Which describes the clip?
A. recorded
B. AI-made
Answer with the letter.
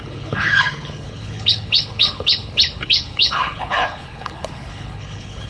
B